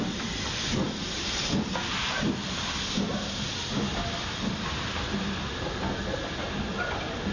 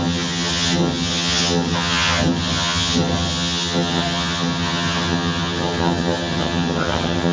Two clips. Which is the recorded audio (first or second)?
first